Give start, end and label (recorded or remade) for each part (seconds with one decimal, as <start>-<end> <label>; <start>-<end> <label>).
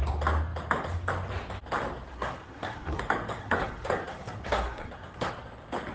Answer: 0.0-2.1 recorded; 2.1-3.0 remade; 3.0-3.4 recorded; 3.4-5.3 remade; 5.3-5.9 recorded